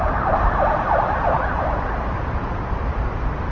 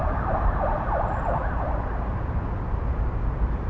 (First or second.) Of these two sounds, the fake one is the first